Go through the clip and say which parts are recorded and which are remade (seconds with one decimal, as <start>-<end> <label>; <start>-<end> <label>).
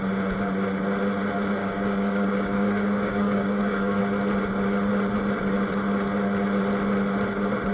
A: 0.0-1.6 recorded; 1.6-4.0 remade; 4.0-7.7 recorded